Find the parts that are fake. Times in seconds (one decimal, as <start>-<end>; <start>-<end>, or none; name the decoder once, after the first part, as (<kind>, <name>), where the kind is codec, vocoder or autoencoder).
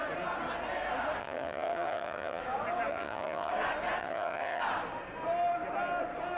1.2-2.4 (vocoder, HiFi-GAN); 2.9-3.5; 4.0-4.6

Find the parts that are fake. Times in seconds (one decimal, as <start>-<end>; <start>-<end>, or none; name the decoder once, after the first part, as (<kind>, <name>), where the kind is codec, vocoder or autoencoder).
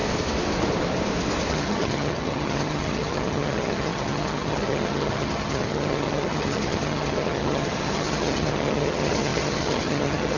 1.5-10.4 (vocoder, HiFi-GAN)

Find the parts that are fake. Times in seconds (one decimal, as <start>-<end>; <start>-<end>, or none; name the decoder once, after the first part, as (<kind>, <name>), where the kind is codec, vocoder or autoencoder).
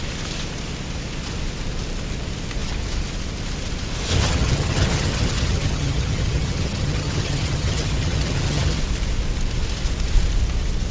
4.1-8.8 (vocoder, HiFi-GAN)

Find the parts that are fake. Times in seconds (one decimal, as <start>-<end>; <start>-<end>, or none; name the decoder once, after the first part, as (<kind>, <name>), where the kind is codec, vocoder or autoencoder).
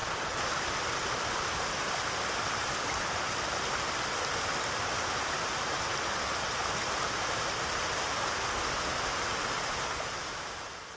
none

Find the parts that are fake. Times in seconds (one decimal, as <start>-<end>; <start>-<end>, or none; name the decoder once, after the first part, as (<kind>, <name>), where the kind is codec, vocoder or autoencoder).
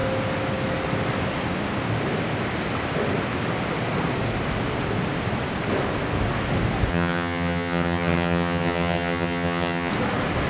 6.9-9.9 (vocoder, HiFi-GAN)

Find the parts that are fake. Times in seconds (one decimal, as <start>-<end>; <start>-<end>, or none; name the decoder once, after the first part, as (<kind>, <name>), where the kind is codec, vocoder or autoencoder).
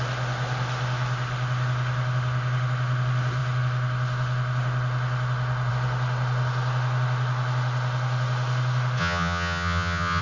9.0-10.2 (vocoder, HiFi-GAN)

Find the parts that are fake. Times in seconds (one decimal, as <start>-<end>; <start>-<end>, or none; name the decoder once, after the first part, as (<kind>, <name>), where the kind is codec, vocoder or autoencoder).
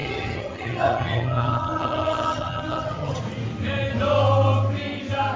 0.0-3.2 (vocoder, HiFi-GAN)